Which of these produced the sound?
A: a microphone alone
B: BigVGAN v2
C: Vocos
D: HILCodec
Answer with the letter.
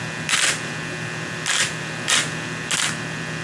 A